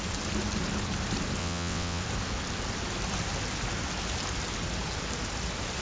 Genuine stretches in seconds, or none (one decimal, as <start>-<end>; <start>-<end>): 0.0-1.4; 2.0-5.8